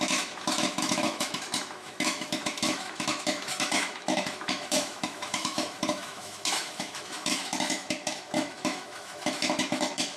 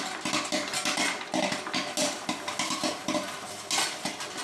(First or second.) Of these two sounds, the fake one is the first